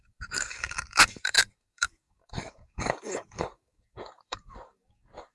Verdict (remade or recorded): remade